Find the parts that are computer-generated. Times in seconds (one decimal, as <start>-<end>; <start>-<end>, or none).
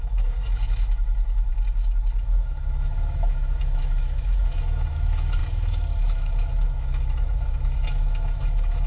0.0-1.5; 2.2-8.9